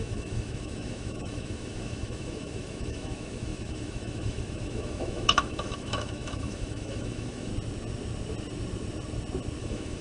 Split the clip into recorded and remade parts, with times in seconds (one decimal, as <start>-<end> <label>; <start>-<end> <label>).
0.0-7.5 remade; 7.5-9.6 recorded; 9.6-10.0 remade